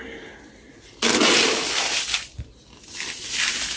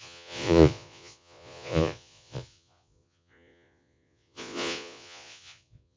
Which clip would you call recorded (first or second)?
first